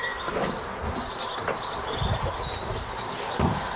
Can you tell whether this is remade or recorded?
recorded